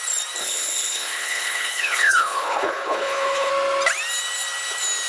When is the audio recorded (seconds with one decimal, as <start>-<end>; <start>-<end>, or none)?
0.0-0.4; 3.5-5.1